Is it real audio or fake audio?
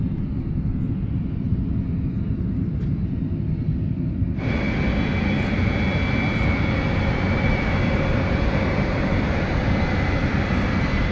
real